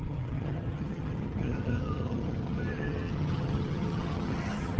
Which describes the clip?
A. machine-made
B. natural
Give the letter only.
A